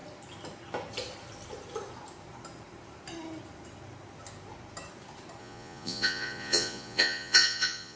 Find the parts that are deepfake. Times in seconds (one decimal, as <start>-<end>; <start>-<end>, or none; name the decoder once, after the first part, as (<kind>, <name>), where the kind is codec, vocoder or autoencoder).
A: 5.4-8.0 (vocoder, Vocos)